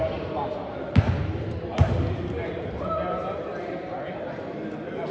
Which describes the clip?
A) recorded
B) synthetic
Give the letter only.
A